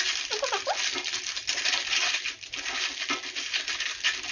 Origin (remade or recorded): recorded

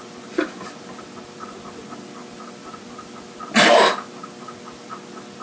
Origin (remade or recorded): recorded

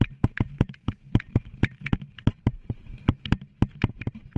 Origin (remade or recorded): remade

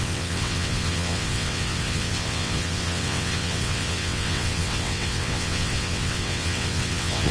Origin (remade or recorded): remade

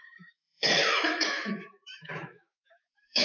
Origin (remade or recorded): remade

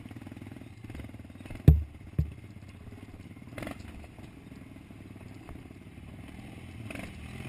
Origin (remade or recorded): recorded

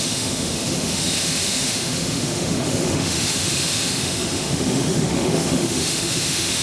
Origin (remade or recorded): remade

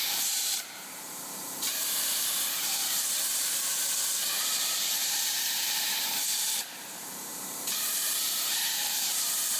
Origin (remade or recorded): remade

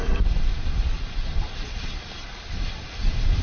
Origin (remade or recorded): recorded